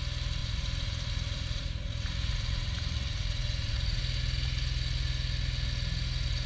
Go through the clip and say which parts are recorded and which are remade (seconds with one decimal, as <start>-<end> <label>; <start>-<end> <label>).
0.0-0.4 recorded; 0.4-4.0 remade; 4.0-6.5 recorded